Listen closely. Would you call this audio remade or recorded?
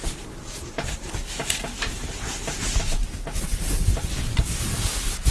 recorded